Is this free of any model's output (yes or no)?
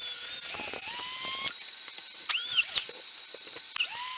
yes